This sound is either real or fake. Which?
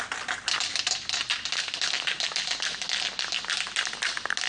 real